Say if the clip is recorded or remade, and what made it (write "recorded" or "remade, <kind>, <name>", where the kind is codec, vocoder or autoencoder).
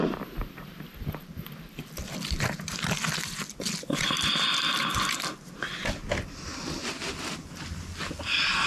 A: recorded